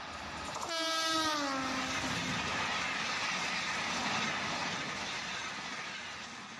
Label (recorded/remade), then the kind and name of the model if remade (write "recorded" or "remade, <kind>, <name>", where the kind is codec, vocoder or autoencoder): recorded